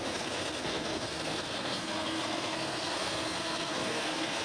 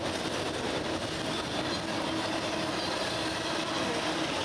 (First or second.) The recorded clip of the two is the second